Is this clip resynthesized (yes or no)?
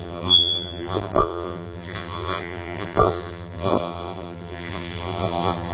yes